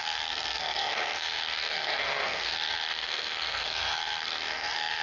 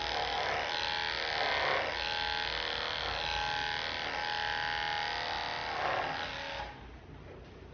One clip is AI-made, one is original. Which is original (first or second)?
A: second